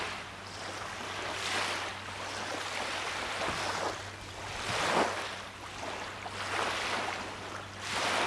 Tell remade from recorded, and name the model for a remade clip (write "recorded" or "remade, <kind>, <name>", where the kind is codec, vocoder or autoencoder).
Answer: recorded